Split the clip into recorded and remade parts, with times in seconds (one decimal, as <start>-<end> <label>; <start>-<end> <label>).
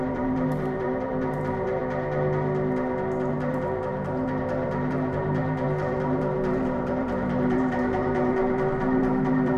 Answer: 0.0-1.8 remade; 1.8-3.3 recorded; 3.3-9.6 remade